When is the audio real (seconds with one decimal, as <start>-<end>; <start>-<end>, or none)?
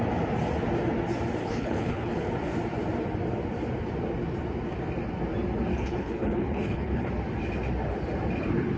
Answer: 0.0-1.4; 2.3-5.7; 7.1-8.8